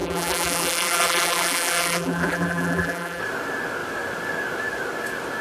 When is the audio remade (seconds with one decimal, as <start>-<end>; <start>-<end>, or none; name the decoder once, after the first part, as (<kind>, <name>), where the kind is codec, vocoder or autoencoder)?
0.0-3.2 (vocoder, BigVGAN v2)